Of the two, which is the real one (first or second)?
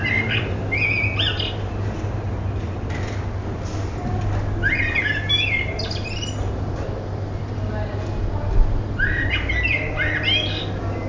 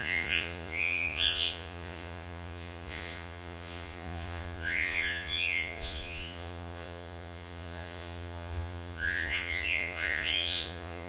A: first